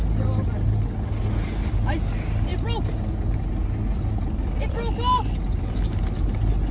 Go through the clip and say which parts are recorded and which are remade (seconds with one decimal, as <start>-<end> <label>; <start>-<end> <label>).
0.0-6.7 recorded